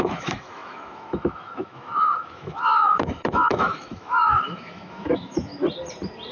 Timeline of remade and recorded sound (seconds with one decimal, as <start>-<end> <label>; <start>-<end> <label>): 0.0-5.5 remade; 5.5-6.3 recorded